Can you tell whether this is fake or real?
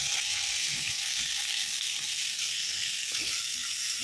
fake